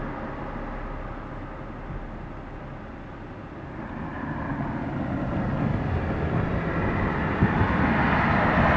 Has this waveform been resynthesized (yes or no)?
no